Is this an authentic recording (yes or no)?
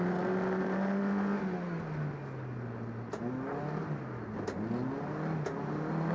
yes